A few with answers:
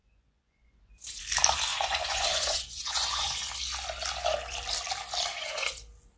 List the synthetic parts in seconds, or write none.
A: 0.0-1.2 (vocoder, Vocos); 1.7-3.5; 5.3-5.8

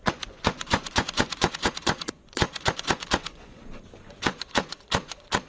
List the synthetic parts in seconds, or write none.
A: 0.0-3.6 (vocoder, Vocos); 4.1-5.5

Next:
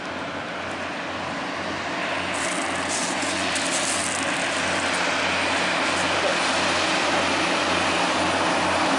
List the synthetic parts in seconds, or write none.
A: 3.0-3.5 (vocoder, Vocos)